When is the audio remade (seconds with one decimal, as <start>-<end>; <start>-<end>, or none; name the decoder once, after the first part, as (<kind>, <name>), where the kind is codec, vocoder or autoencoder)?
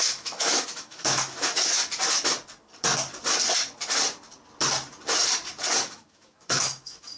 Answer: 0.0-1.8 (autoencoder, DAC-VAE); 5.8-7.2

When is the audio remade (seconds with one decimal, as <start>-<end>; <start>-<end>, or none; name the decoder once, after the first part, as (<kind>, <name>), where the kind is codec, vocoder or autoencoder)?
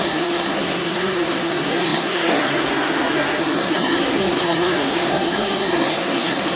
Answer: 0.0-6.6 (codec, SNAC)